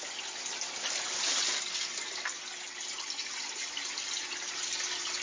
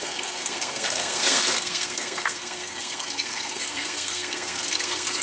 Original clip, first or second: first